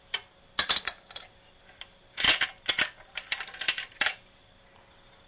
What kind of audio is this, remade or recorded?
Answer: recorded